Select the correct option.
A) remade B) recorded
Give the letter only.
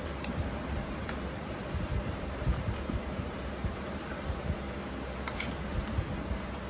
A